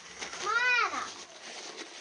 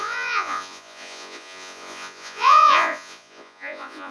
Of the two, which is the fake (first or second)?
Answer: second